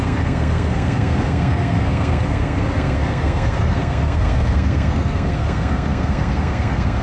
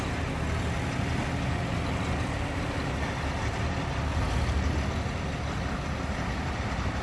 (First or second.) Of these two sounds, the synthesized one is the first